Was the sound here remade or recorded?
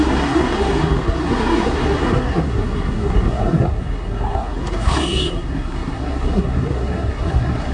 remade